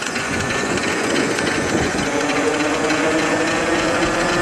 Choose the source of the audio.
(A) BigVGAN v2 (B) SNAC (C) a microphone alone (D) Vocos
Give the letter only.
D